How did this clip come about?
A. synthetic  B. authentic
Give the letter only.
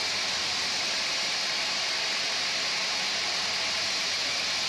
B